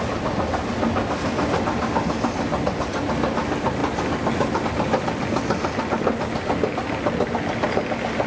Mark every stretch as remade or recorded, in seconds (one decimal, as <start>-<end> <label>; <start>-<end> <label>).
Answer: 0.0-8.3 recorded